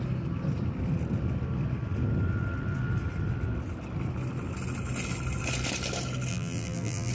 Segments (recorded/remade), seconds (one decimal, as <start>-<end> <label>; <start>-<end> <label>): 0.0-6.3 recorded; 6.3-7.1 remade